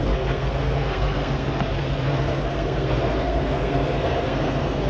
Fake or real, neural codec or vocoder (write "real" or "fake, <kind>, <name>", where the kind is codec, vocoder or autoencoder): fake, codec, SNAC